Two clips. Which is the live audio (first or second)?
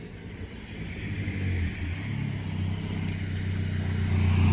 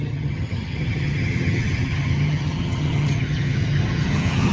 first